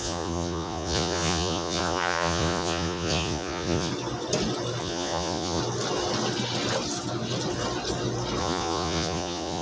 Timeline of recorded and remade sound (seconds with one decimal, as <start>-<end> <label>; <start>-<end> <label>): 0.0-3.9 remade; 3.9-4.8 recorded; 4.8-5.6 remade; 5.6-8.4 recorded; 8.4-9.6 remade